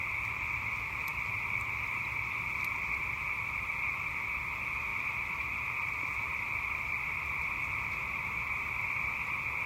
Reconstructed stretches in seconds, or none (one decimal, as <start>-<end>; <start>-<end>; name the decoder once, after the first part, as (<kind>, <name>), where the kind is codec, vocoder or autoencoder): 4.9-5.6 (vocoder, BigVGAN v2); 6.3-8.9